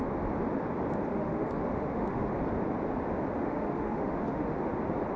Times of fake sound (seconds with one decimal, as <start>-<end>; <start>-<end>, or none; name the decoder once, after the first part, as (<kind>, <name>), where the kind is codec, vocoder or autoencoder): 1.1-2.3 (autoencoder, DAC-VAE); 3.3-4.7